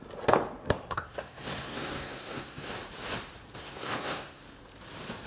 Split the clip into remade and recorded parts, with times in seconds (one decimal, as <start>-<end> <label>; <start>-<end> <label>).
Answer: 0.0-0.6 recorded; 0.6-2.7 remade; 2.7-3.6 recorded; 3.6-4.4 remade; 4.4-5.3 recorded

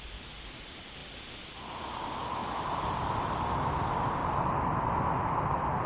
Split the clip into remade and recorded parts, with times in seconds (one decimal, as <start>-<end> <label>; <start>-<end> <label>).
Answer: 0.0-5.9 recorded

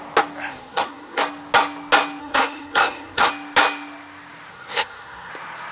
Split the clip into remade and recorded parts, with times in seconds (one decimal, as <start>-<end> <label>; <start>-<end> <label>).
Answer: 0.0-0.5 recorded; 0.5-1.2 remade; 1.2-2.2 recorded; 2.2-3.3 remade; 3.3-4.5 recorded; 4.5-5.3 remade; 5.3-5.7 recorded